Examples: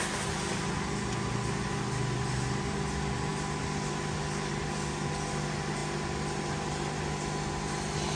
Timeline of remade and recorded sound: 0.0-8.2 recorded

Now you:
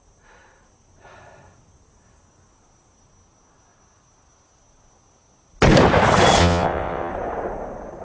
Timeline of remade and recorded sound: 0.0-6.4 recorded; 6.4-7.1 remade; 7.1-8.0 recorded

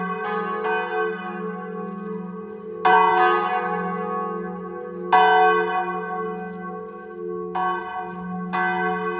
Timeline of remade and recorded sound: 0.0-9.2 recorded

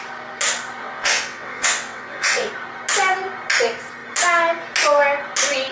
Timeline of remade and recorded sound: 0.0-0.8 recorded; 0.8-2.5 remade; 2.5-5.7 recorded